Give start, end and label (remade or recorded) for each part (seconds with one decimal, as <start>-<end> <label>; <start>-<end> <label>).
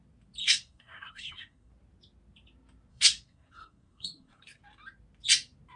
0.0-0.4 recorded; 0.4-1.7 remade; 1.7-2.9 recorded; 2.9-4.6 remade; 4.6-5.8 recorded